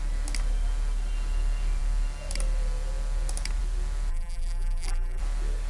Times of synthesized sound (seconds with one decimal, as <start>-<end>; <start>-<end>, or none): 4.1-5.2